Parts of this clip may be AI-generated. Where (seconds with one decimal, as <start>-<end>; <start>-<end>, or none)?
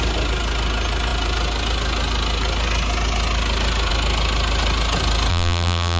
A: 5.3-6.0